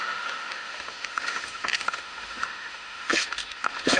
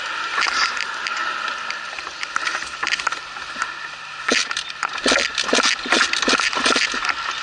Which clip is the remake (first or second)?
first